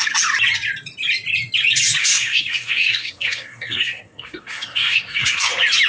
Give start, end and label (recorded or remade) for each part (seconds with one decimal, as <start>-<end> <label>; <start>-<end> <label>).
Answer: 0.0-2.0 recorded; 2.0-5.5 remade; 5.5-5.9 recorded